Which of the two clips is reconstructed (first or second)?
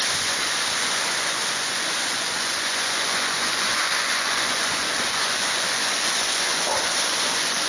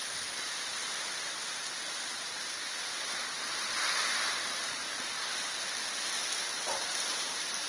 first